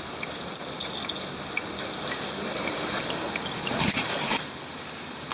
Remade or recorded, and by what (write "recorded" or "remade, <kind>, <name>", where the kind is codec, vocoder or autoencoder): recorded